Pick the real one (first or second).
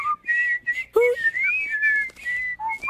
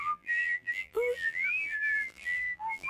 first